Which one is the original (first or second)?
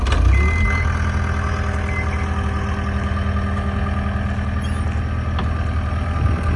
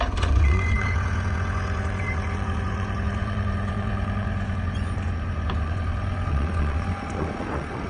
first